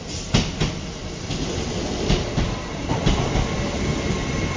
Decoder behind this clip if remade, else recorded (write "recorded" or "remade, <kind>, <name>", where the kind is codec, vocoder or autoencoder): recorded